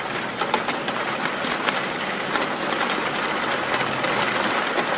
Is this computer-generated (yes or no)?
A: no